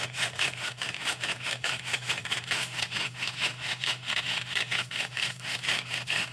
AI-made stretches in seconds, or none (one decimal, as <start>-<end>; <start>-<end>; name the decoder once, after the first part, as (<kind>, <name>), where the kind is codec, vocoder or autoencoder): 0.0-6.3 (autoencoder, DAC-VAE)